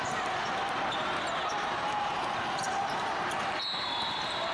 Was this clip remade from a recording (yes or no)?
no